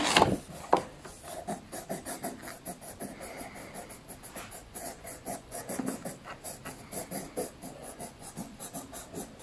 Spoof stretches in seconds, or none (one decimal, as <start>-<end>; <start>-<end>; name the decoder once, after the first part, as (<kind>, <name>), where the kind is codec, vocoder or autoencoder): 4.6-5.8 (vocoder, Vocos); 7.8-8.6